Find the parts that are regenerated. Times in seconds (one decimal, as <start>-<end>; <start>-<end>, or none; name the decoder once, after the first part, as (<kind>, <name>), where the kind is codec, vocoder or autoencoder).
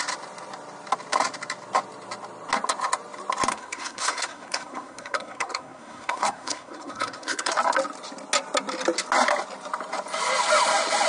3.5-7.5 (codec, SNAC)